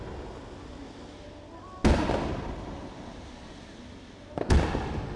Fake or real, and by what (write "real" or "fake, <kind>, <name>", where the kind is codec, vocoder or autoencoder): real